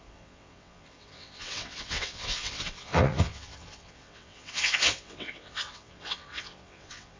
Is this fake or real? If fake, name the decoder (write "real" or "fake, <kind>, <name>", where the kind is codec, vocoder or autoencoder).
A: fake, vocoder, WaveNeXt